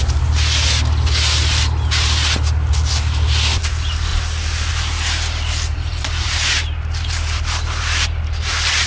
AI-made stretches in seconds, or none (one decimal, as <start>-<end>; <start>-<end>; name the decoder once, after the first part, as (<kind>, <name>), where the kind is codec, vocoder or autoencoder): 5.7-8.2 (vocoder, BigVGAN v2)